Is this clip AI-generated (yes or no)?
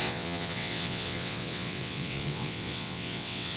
yes